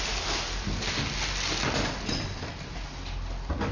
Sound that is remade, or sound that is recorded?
recorded